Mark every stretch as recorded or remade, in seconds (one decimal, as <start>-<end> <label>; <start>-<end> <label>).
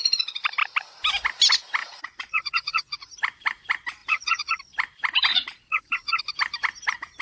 0.0-1.8 recorded; 1.8-3.1 remade; 3.1-4.0 recorded; 4.0-4.6 remade; 4.6-5.3 recorded; 5.3-6.2 remade; 6.2-7.2 recorded